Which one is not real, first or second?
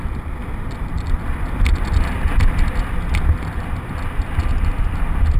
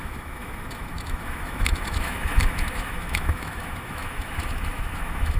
second